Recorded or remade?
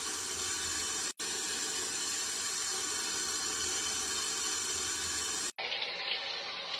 recorded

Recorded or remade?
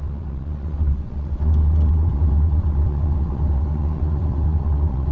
remade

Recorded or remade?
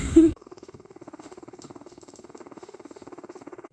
remade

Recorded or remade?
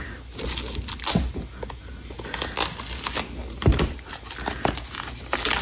recorded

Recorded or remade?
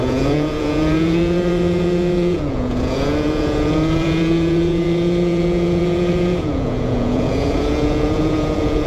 remade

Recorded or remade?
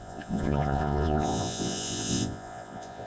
remade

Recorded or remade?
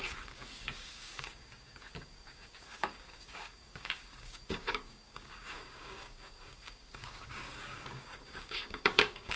remade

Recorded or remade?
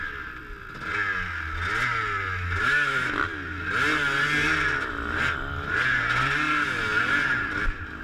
recorded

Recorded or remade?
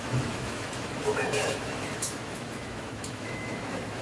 remade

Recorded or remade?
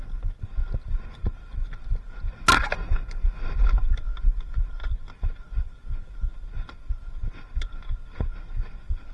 recorded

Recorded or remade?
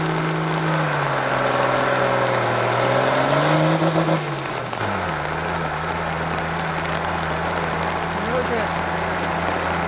recorded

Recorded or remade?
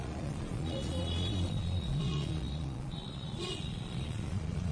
remade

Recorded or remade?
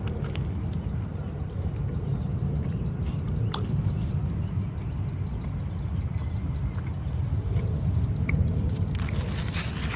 recorded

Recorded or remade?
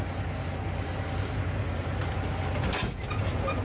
recorded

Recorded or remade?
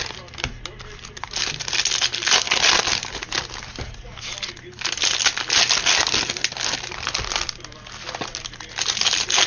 recorded